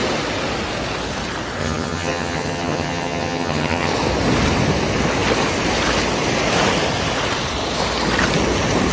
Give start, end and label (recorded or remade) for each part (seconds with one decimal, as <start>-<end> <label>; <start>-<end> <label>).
0.0-1.6 recorded; 1.6-3.9 remade; 3.9-8.9 recorded